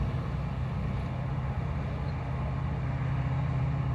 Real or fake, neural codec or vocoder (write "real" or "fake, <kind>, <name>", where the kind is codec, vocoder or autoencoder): real